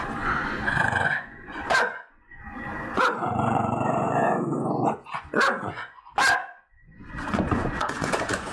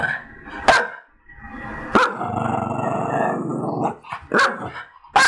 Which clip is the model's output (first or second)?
first